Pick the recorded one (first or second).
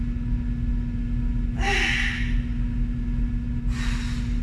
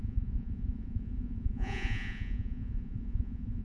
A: first